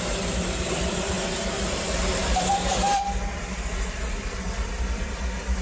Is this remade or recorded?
recorded